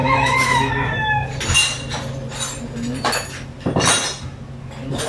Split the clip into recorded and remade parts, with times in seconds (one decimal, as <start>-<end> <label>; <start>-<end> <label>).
0.0-0.7 remade; 0.7-5.1 recorded